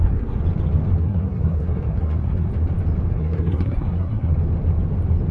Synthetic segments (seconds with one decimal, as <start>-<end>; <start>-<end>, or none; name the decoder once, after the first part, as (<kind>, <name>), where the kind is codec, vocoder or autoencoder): 0.0-0.4 (codec, SNAC); 1.0-2.5; 3.1-4.3